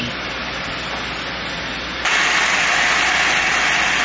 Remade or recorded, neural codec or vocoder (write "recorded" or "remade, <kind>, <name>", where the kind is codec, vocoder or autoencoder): recorded